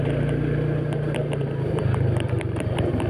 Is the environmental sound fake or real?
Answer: real